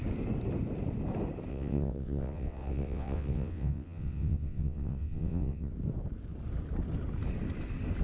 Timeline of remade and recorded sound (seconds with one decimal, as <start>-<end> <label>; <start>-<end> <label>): 0.0-1.5 recorded; 1.5-5.7 remade; 5.7-8.0 recorded